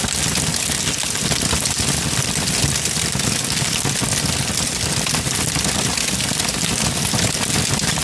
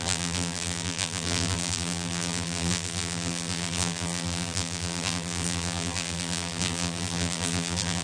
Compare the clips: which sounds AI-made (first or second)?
second